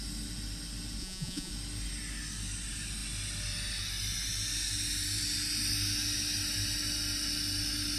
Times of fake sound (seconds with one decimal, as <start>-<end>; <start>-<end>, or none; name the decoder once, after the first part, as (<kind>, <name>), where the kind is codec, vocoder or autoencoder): 1.0-1.5 (vocoder, Vocos)